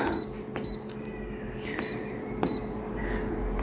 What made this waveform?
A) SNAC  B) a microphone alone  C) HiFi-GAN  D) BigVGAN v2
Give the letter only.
B